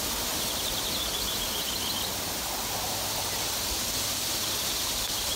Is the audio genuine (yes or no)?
yes